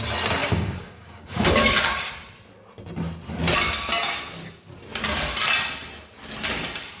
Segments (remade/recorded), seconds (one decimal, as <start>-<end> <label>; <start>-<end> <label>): 0.0-0.4 recorded; 0.4-2.1 remade; 2.1-7.0 recorded